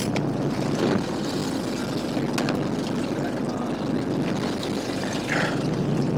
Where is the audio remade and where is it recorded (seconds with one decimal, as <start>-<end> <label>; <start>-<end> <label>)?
0.0-1.4 remade; 1.4-5.1 recorded; 5.1-6.2 remade